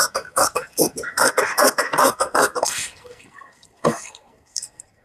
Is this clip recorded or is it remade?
remade